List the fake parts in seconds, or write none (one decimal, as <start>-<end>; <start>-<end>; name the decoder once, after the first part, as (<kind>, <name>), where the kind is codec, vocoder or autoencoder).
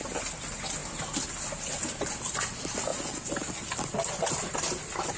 none